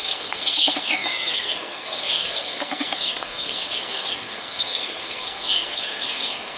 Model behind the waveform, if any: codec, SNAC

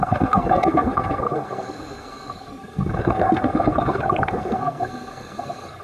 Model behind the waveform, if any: codec, SNAC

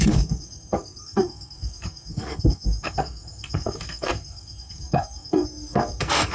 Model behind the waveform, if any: codec, SNAC